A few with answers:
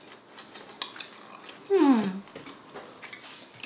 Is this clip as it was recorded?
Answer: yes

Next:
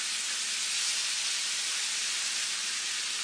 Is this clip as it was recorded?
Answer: yes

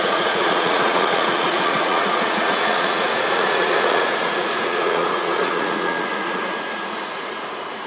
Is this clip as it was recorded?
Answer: no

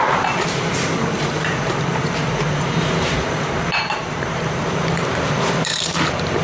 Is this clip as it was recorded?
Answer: no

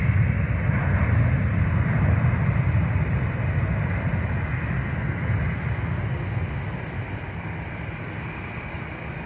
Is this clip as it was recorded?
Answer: yes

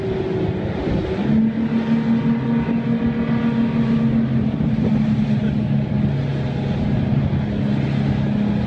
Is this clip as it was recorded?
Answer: yes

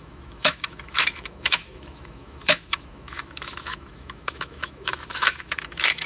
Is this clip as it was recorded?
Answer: no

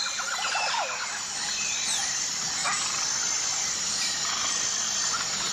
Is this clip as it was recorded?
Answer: yes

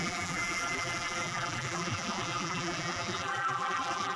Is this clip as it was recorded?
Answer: no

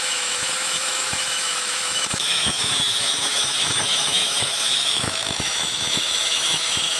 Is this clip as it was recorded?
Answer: no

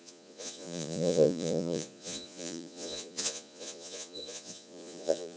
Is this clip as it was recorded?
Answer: no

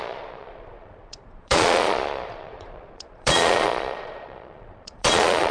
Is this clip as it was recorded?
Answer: no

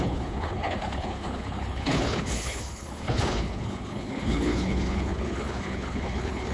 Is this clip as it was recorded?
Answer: no